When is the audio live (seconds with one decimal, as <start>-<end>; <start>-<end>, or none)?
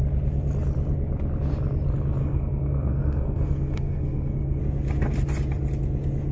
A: 0.0-2.2; 4.6-6.3